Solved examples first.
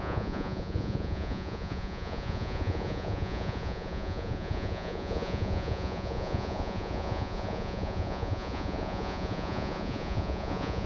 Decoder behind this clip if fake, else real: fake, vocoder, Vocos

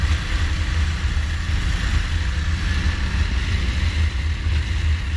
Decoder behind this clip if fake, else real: real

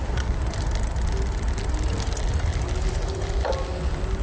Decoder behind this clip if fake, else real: real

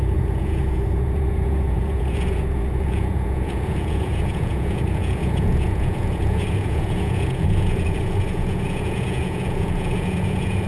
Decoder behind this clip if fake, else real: fake, vocoder, Vocos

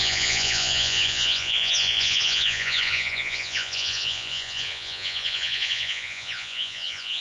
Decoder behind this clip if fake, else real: fake, vocoder, Vocos